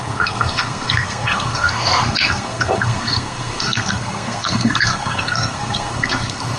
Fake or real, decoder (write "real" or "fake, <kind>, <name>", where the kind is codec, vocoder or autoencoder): fake, codec, SNAC